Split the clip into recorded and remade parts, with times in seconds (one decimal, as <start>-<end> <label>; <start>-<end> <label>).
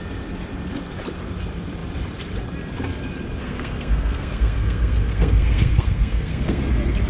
0.0-3.4 recorded; 3.4-6.6 remade; 6.6-7.1 recorded